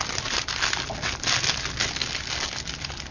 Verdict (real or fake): real